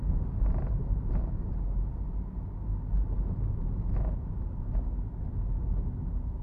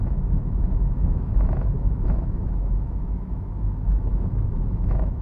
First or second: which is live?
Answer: first